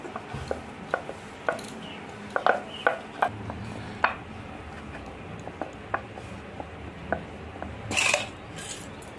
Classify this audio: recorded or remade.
recorded